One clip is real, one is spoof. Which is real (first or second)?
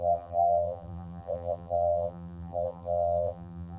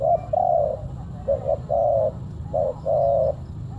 second